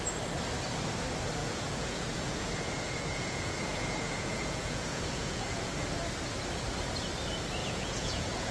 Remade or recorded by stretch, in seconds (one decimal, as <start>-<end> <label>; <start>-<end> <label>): 0.0-1.4 recorded; 1.4-5.7 remade; 5.7-7.6 recorded; 7.6-8.5 remade